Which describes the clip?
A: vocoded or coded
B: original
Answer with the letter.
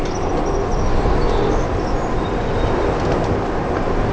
B